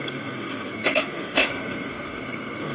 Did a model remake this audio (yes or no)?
yes